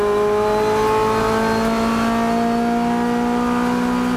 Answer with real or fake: real